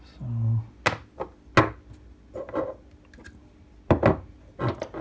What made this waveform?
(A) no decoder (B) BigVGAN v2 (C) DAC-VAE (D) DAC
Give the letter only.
A